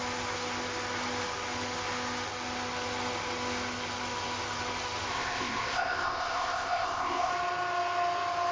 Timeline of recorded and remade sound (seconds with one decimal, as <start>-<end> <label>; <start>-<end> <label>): 0.0-5.1 recorded; 5.1-7.3 remade; 7.3-8.5 recorded